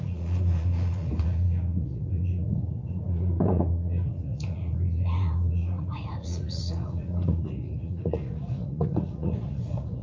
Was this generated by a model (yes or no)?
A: yes